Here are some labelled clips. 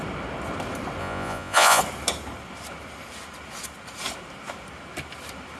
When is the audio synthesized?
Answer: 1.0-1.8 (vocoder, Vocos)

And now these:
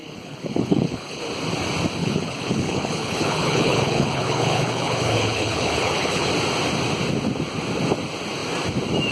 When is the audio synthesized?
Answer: 0.0-1.2 (codec, HILCodec); 2.0-6.3

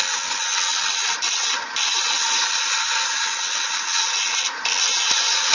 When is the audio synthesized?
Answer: 0.7-3.2 (vocoder, BigVGAN v2)

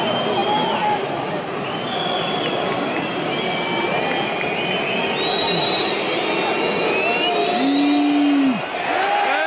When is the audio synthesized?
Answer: none

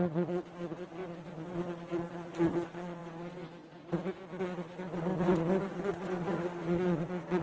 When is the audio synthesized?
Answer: 0.0-1.0 (vocoder, Vocos); 1.5-3.0; 4.4-5.1; 5.9-7.4